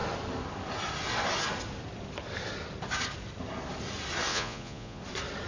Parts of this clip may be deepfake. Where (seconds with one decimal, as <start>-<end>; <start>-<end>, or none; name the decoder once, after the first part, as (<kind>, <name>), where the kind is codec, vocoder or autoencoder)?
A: 4.3-5.0 (vocoder, Vocos)